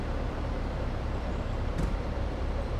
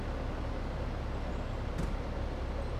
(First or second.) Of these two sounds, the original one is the second